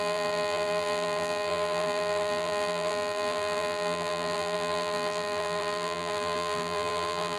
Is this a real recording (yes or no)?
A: no